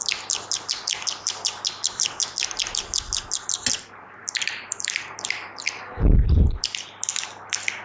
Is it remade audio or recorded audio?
recorded